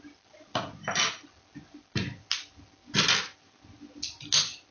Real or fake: real